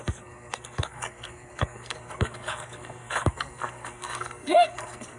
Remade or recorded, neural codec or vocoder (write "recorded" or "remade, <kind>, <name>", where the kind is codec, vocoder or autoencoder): remade, codec, SNAC